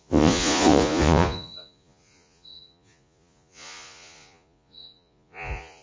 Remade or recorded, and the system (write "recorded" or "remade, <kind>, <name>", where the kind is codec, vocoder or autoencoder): remade, vocoder, Vocos